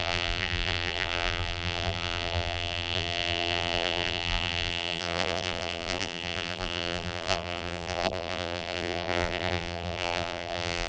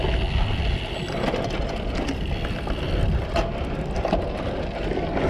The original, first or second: second